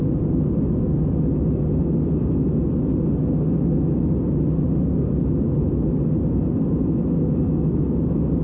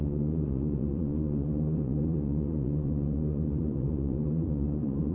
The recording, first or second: first